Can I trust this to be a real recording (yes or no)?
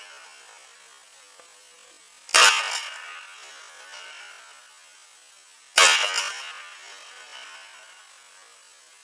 yes